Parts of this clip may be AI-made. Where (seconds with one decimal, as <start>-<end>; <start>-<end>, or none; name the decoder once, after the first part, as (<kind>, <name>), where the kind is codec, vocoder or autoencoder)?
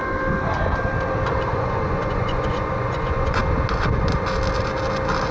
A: 1.5-3.4 (vocoder, Vocos)